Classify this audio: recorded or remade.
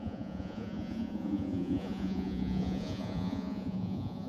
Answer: remade